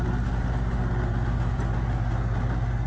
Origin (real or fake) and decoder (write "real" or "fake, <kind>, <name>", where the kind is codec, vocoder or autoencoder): real